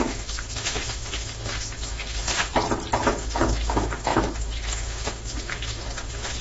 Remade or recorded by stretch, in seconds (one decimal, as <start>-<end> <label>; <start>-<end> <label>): 0.0-2.5 remade; 2.5-3.1 recorded; 3.1-6.4 remade